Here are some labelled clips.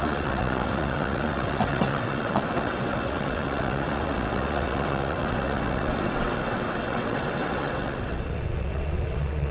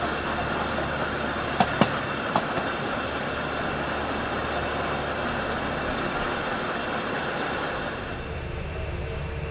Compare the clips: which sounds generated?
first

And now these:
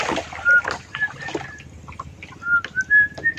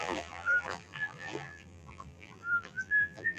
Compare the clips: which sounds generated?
second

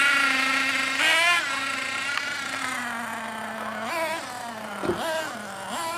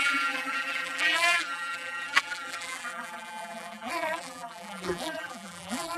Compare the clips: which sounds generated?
second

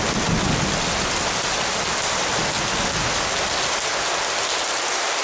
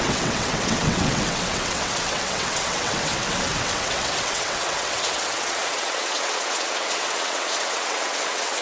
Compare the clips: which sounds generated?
second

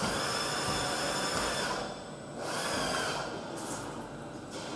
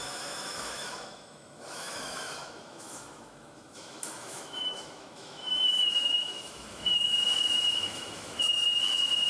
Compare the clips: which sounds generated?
second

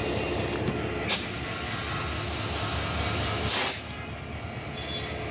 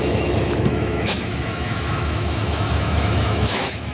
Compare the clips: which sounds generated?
second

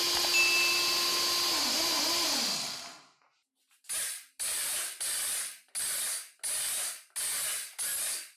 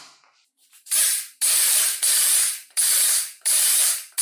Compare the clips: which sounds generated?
second